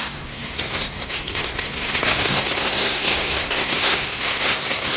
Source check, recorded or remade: remade